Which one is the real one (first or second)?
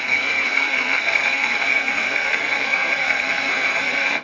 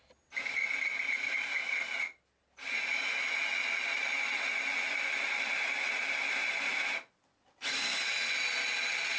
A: second